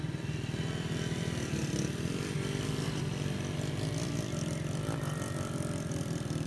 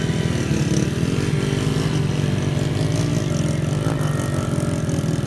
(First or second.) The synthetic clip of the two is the first